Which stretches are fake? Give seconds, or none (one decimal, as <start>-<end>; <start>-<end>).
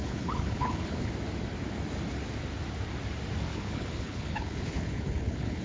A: 0.0-1.1; 3.5-5.6